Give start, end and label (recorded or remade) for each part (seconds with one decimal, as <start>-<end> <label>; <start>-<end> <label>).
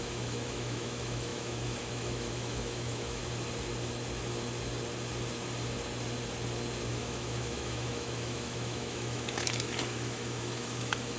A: 0.0-3.2 remade; 3.2-6.9 recorded; 6.9-11.2 remade